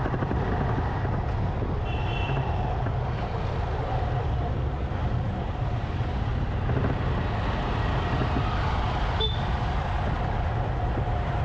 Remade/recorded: recorded